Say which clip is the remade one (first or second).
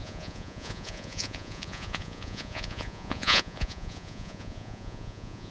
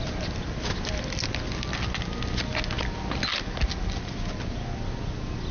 first